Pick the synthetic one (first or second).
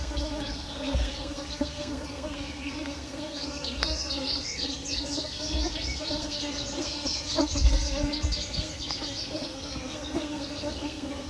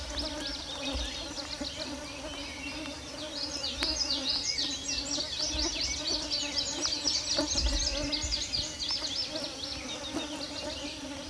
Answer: first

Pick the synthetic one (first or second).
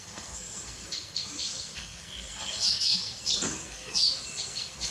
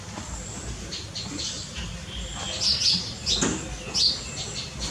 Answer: first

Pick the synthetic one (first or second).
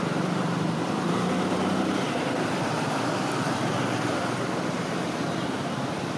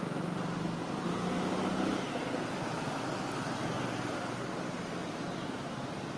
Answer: first